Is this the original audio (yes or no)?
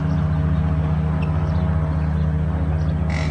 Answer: yes